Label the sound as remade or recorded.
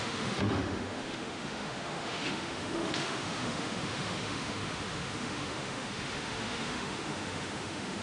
remade